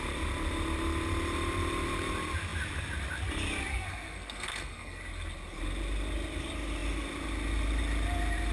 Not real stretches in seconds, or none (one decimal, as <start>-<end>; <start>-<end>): 3.7-5.0